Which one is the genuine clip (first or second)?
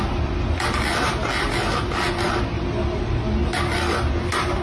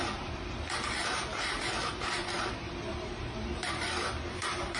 first